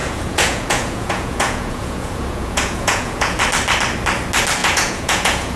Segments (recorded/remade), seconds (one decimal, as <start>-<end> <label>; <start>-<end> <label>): 0.0-3.4 remade; 3.4-4.6 recorded; 4.6-5.6 remade